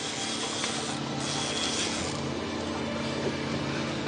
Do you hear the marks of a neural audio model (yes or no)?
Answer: no